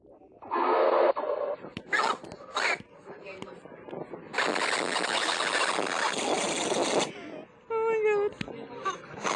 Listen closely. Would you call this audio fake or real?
real